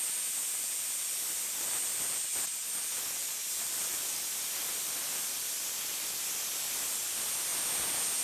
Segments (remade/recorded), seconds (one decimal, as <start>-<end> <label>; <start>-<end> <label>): 0.0-8.2 recorded